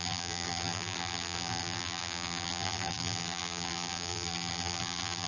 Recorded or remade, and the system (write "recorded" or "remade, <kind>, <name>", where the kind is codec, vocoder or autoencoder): remade, vocoder, BigVGAN v2